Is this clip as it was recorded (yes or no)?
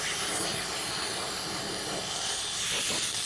yes